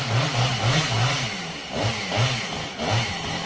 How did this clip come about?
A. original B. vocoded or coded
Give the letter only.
A